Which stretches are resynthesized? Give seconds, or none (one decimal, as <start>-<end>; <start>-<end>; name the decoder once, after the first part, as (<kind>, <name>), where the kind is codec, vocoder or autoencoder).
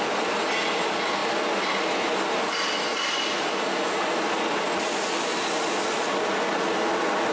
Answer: none